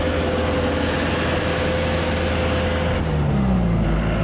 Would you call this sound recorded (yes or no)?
yes